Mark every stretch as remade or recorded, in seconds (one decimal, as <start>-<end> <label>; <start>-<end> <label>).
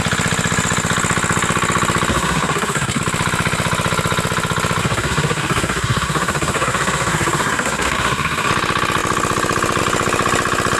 0.0-2.1 recorded; 2.1-3.0 remade; 3.0-4.8 recorded; 4.8-8.5 remade; 8.5-10.8 recorded